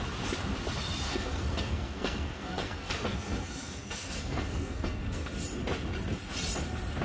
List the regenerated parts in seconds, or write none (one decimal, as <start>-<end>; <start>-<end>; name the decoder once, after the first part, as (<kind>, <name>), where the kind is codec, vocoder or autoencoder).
1.1-5.3 (codec, SNAC)